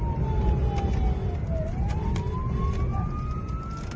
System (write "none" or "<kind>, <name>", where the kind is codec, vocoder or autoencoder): none